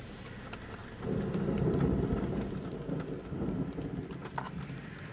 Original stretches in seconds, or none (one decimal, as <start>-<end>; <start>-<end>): 4.2-5.1